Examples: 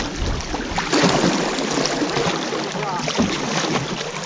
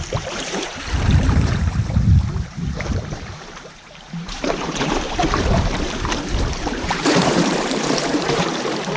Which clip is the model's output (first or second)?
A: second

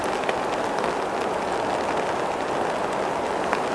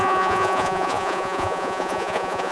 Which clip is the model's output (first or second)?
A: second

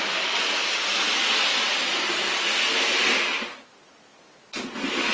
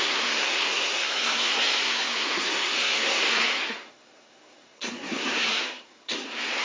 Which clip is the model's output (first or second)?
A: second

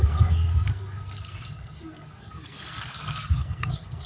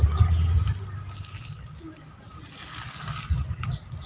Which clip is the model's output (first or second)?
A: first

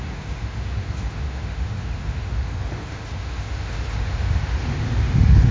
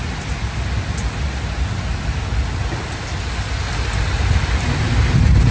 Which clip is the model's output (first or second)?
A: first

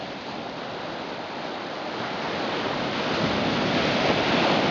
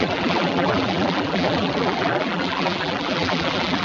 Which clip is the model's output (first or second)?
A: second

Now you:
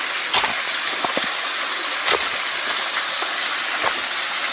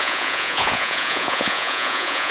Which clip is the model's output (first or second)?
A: second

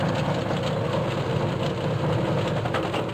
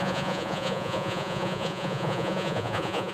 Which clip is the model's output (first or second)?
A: second